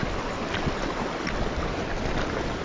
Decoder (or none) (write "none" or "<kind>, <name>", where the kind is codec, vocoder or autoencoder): none